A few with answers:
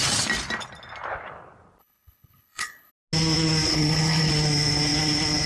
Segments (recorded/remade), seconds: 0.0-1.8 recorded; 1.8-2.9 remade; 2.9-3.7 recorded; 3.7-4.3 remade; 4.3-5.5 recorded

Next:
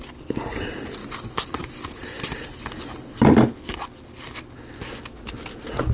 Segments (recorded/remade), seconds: 0.0-5.9 recorded

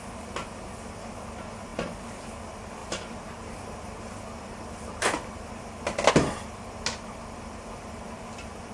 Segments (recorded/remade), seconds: 0.0-8.7 recorded

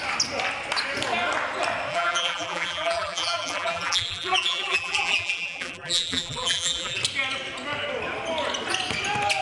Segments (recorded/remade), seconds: 0.0-1.9 recorded; 1.9-7.0 remade; 7.0-9.4 recorded

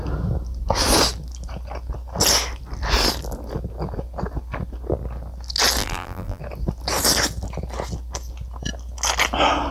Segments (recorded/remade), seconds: 0.0-5.8 recorded; 5.8-6.4 remade; 6.4-9.7 recorded

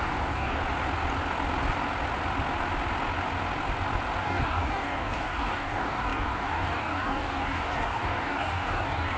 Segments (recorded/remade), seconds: 0.0-0.6 remade; 0.6-4.2 recorded; 4.2-9.2 remade

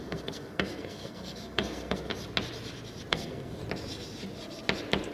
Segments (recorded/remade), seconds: 0.0-2.1 remade; 2.1-3.1 recorded; 3.1-3.6 remade; 3.6-5.1 recorded